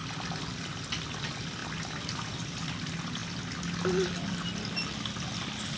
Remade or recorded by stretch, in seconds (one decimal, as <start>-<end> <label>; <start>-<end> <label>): 0.0-5.8 recorded